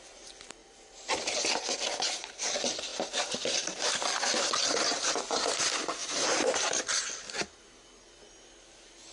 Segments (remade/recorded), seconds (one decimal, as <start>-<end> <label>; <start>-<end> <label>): 0.0-0.6 recorded; 0.6-1.4 remade; 1.4-6.0 recorded; 6.0-6.8 remade; 6.8-9.1 recorded